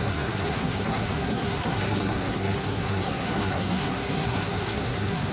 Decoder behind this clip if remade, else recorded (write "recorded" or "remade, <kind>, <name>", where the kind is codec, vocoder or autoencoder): remade, codec, SNAC